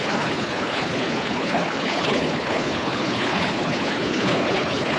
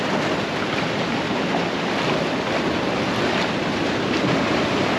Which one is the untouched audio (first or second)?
second